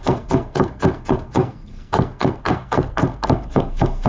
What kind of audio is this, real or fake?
fake